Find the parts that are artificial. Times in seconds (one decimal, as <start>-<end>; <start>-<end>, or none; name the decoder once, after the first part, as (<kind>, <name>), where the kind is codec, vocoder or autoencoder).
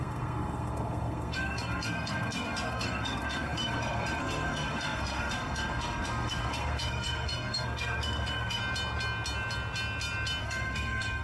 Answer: 0.0-8.6 (codec, SNAC); 10.4-11.2